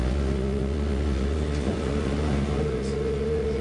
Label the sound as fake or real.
fake